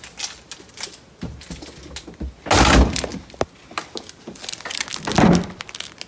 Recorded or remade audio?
recorded